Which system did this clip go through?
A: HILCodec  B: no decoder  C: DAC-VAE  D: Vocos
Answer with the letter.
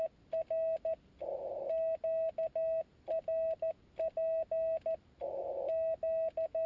B